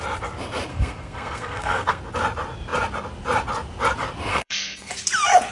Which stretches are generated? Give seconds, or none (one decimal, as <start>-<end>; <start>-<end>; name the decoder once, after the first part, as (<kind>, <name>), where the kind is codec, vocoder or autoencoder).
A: 0.7-2.0 (codec, SNAC); 4.3-4.9